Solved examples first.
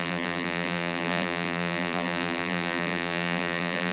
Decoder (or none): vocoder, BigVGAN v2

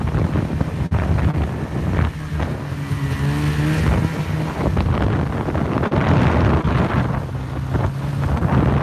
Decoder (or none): none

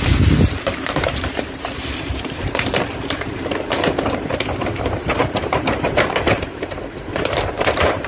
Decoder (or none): vocoder, BigVGAN v2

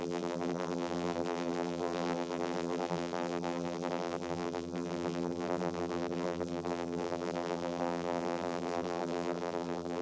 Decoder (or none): vocoder, BigVGAN v2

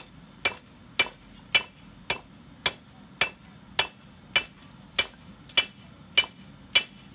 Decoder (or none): none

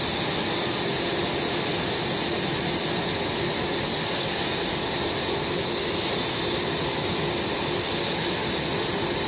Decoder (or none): none